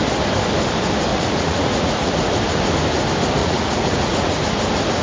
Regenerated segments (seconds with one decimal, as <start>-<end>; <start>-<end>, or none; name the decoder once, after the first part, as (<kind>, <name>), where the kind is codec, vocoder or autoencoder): 1.1-2.1 (vocoder, Vocos); 3.4-4.4